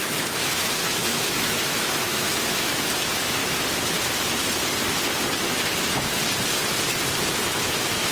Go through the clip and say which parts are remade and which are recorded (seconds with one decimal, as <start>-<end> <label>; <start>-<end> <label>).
0.0-3.4 remade; 3.4-5.5 recorded; 5.5-6.2 remade; 6.2-7.4 recorded; 7.4-8.1 remade